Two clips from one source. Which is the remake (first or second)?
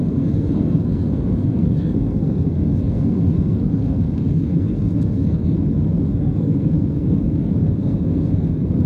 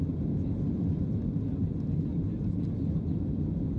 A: first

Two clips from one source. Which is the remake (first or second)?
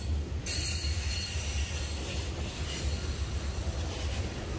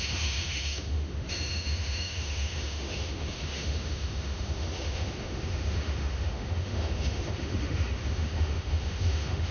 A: second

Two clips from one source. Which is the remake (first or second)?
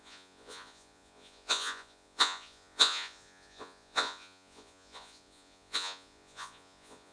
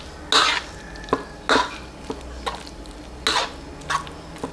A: first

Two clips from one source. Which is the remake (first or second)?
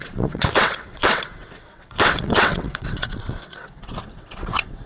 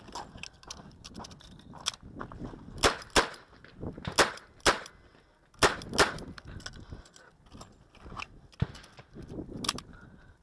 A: first